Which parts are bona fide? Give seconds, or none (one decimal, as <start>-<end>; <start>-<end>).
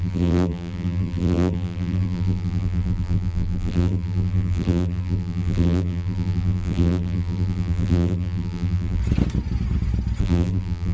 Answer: 9.0-10.2